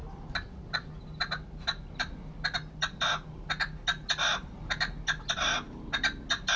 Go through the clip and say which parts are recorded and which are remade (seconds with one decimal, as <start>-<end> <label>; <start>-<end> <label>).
0.0-6.6 recorded